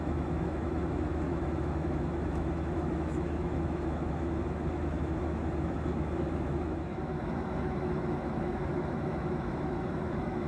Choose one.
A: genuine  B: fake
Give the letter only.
B